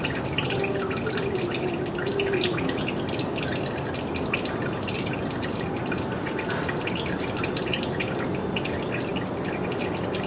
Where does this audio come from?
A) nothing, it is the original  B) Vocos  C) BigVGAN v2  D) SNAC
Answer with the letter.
A